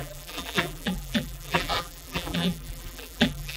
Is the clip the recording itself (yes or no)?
no